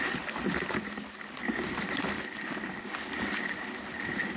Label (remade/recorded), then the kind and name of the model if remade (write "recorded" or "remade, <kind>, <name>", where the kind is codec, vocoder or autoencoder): recorded